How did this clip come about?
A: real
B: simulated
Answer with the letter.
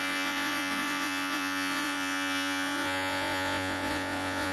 B